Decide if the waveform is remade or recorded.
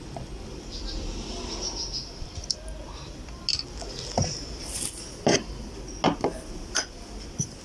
recorded